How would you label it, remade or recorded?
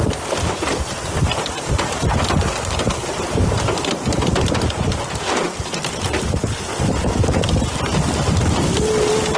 recorded